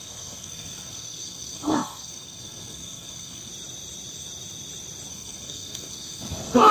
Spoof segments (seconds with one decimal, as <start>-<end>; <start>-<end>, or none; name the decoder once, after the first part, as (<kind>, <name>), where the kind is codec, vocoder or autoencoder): 0.0-3.5 (codec, SNAC); 5.1-6.7